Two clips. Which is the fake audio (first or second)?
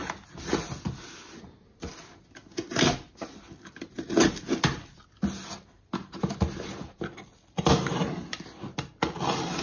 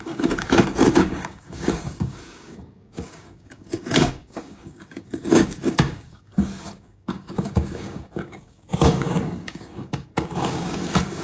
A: second